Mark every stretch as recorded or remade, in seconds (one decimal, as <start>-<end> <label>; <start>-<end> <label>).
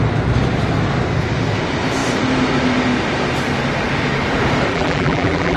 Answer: 0.0-4.7 recorded; 4.7-5.6 remade